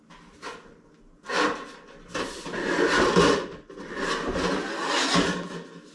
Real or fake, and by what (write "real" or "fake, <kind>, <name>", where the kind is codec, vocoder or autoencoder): real